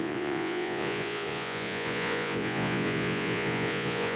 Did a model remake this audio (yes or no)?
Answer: yes